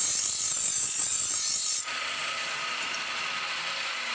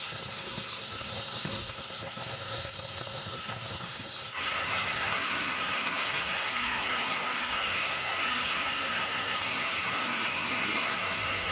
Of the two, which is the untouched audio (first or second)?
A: first